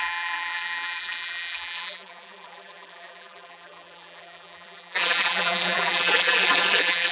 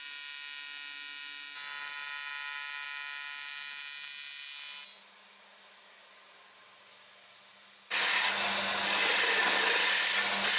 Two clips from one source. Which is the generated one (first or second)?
first